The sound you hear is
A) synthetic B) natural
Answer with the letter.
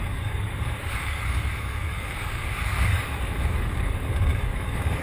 A